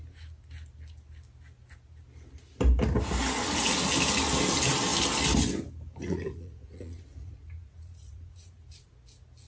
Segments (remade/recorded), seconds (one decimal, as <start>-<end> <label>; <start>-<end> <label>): 0.0-6.0 recorded; 6.0-8.9 remade; 8.9-9.5 recorded